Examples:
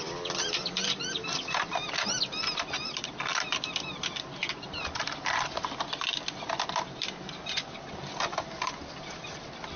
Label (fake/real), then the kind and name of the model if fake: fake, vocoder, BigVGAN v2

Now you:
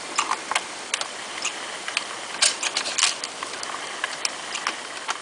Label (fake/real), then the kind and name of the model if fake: real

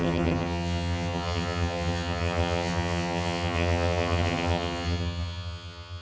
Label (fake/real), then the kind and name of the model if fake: fake, vocoder, HiFi-GAN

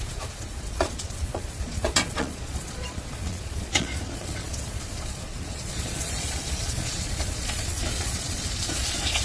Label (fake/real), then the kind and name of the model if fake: fake, vocoder, Vocos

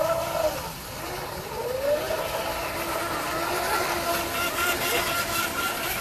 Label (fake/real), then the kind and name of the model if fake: real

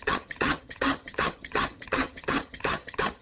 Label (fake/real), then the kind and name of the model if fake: fake, vocoder, HiFi-GAN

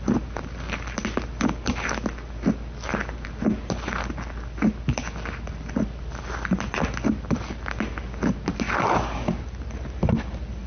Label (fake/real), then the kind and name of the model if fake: real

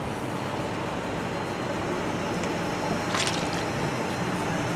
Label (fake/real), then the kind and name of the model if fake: real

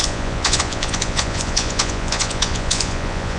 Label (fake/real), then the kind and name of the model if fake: fake, vocoder, Vocos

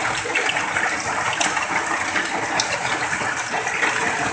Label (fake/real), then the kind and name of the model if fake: real